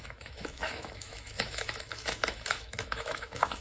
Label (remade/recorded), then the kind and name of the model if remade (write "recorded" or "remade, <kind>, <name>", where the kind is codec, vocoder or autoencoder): remade, autoencoder, DAC-VAE